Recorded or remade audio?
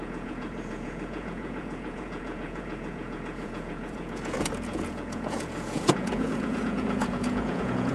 remade